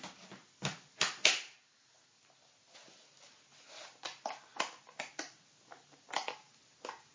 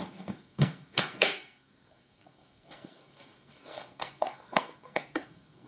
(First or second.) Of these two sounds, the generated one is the second